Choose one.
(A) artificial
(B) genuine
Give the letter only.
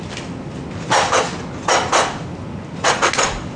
B